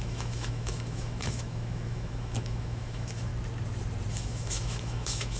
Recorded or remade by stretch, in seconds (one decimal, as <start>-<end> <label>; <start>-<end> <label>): 0.0-3.3 remade; 3.3-4.1 recorded; 4.1-5.4 remade